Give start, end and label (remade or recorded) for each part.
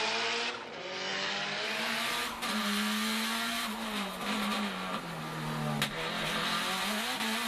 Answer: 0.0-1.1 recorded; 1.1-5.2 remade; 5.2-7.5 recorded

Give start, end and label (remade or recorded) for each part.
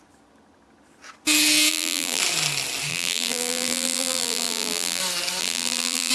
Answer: 0.0-1.7 recorded; 1.7-2.2 remade; 2.2-2.9 recorded; 2.9-5.0 remade; 5.0-5.4 recorded; 5.4-6.1 remade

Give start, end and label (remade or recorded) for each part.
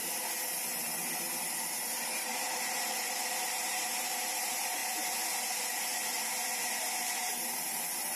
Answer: 0.0-1.5 recorded; 1.5-4.8 remade; 4.8-5.5 recorded; 5.5-5.9 remade; 5.9-7.0 recorded; 7.0-8.2 remade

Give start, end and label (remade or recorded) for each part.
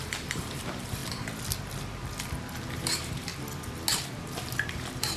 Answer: 0.0-1.0 remade; 1.0-2.7 recorded; 2.7-3.3 remade; 3.3-4.0 recorded; 4.0-5.2 remade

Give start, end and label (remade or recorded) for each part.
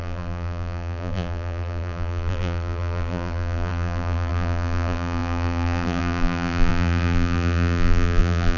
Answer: 0.0-8.6 remade